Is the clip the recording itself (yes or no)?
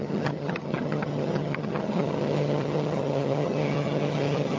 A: no